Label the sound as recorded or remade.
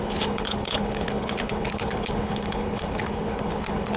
remade